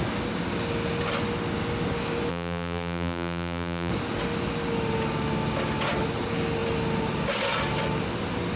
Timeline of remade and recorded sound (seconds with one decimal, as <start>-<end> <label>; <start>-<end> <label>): 0.0-2.3 recorded; 2.3-3.9 remade; 3.9-8.6 recorded